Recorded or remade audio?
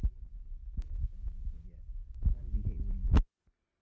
recorded